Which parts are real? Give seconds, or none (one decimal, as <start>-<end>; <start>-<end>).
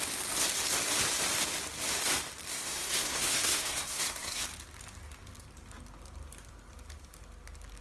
0.0-2.5; 4.4-7.8